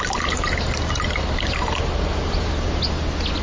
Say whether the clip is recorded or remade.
recorded